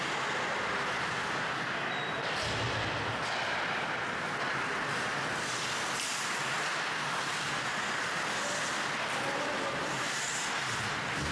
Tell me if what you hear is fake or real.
real